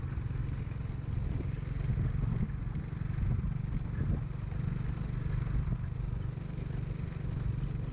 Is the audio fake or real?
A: real